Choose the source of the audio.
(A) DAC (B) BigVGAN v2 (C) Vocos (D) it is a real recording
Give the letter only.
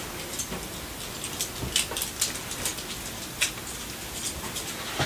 D